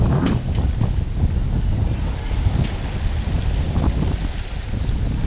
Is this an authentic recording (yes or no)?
yes